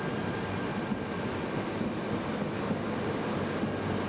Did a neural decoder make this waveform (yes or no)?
no